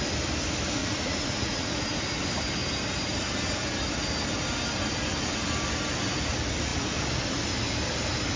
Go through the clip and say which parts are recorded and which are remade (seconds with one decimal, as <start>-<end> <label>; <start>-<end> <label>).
0.0-0.8 recorded; 0.8-1.7 remade; 1.7-8.4 recorded